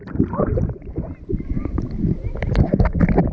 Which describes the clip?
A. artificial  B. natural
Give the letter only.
B